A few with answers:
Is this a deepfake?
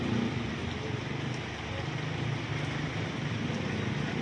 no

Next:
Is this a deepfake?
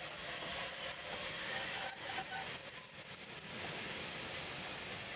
no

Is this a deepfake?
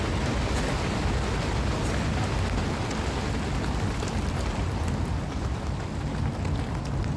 no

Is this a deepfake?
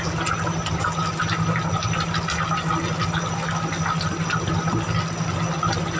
no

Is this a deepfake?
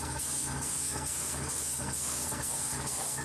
yes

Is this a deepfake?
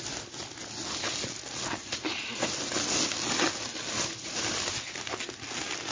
no